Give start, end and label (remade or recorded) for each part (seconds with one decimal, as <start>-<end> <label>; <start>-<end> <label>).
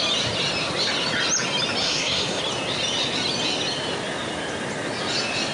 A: 0.0-1.8 recorded; 1.8-2.4 remade; 2.4-5.5 recorded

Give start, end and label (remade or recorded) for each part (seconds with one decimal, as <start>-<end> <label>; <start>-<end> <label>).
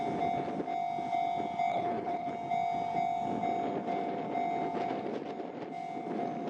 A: 0.0-1.7 recorded; 1.7-2.3 remade; 2.3-6.5 recorded